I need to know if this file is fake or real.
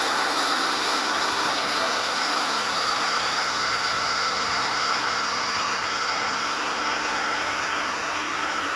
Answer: fake